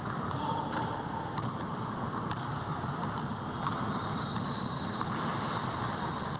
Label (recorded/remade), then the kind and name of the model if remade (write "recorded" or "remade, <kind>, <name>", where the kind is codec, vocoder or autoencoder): remade, vocoder, BigVGAN v2